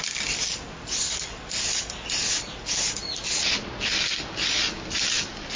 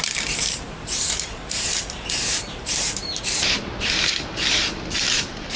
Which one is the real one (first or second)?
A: first